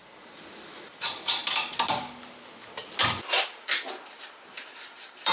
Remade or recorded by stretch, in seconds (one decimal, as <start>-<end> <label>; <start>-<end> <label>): 0.0-1.4 remade; 1.4-4.6 recorded; 4.6-5.3 remade